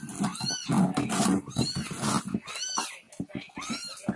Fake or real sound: real